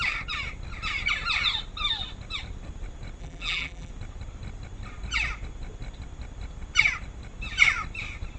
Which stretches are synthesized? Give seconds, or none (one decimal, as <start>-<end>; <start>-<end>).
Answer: 3.2-3.9